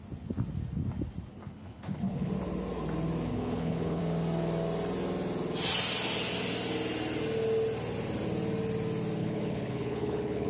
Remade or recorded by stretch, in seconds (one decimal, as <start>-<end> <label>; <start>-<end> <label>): 0.0-1.3 recorded; 1.3-2.3 remade; 2.3-3.3 recorded; 3.3-4.0 remade; 4.0-9.2 recorded; 9.2-10.5 remade